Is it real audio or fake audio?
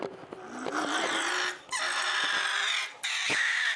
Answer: real